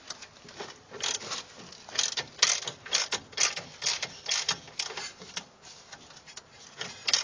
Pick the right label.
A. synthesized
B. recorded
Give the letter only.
B